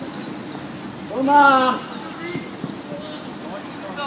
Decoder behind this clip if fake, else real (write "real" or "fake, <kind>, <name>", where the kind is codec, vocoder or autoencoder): real